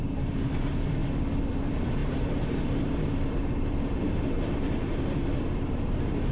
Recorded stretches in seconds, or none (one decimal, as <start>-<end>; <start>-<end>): 1.0-1.5